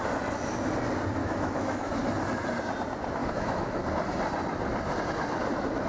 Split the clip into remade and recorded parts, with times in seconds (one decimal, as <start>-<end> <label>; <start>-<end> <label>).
0.0-1.2 recorded; 1.2-1.9 remade; 1.9-3.2 recorded; 3.2-3.8 remade; 3.8-5.9 recorded